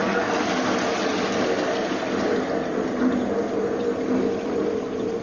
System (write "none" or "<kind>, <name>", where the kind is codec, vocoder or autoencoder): none